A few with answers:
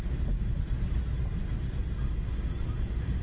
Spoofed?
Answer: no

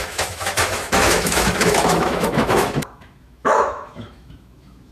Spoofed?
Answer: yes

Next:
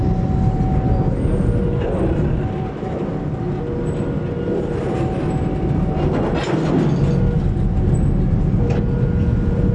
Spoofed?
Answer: no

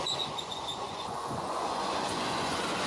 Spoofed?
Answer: yes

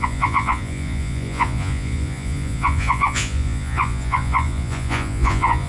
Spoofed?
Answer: yes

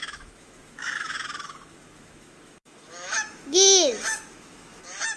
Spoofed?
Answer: yes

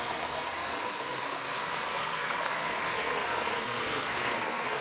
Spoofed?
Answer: yes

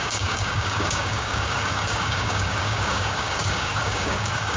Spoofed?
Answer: yes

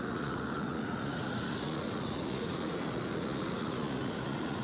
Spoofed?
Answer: yes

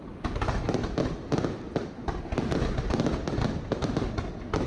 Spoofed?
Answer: no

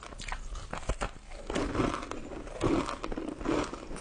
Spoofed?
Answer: no